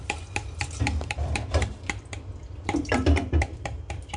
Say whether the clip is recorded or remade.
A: remade